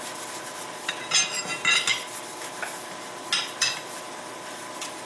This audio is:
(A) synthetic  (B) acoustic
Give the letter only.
B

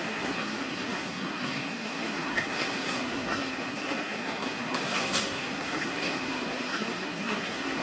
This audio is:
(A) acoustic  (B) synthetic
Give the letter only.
B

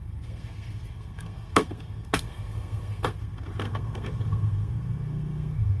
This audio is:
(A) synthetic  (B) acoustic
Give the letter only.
A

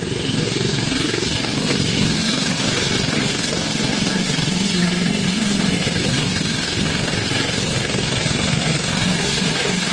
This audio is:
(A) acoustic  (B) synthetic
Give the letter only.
B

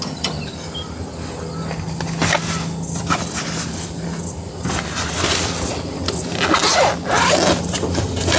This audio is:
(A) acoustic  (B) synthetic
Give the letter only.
A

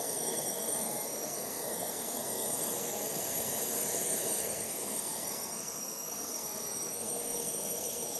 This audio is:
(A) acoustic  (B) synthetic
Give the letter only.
B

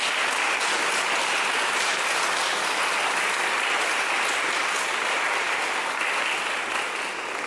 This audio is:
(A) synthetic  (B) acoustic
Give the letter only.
B